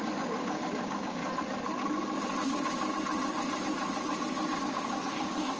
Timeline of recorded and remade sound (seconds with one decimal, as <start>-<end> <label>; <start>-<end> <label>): 0.0-1.2 remade; 1.2-4.6 recorded; 4.6-5.6 remade